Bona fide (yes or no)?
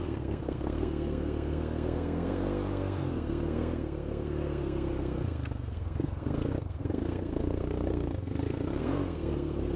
no